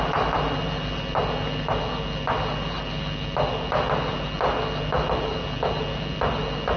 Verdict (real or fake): real